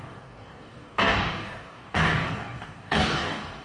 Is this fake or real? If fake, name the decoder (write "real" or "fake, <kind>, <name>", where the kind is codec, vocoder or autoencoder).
fake, codec, DAC